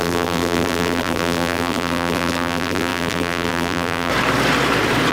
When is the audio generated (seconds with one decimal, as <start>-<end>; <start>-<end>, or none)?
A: 0.0-4.1